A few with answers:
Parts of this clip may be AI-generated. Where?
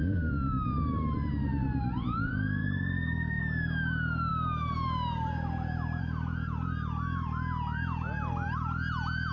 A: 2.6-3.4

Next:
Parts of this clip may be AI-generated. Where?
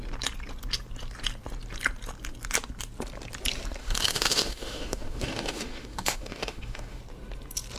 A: 3.8-7.0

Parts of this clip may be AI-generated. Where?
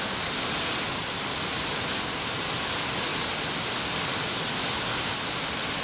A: none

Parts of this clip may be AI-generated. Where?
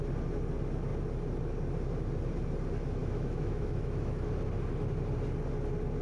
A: 3.0-4.3